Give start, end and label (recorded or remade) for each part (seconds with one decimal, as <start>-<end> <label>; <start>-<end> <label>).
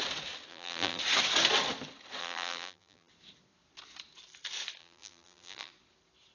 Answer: 0.0-0.5 recorded; 0.5-1.0 remade; 1.0-2.2 recorded; 2.2-3.1 remade; 3.1-4.8 recorded; 4.8-5.7 remade; 5.7-6.3 recorded